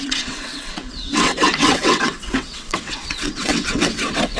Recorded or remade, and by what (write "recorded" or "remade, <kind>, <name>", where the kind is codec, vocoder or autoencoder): remade, vocoder, WaveNeXt